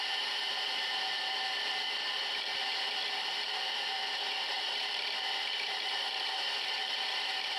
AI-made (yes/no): yes